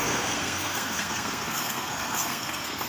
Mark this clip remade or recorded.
remade